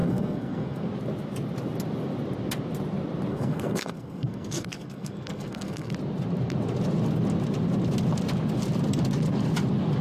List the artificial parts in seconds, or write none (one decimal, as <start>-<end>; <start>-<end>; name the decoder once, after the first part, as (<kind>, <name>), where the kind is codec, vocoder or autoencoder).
0.0-0.9 (codec, SNAC); 3.3-5.9